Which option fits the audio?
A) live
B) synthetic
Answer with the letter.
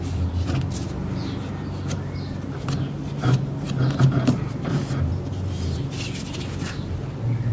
A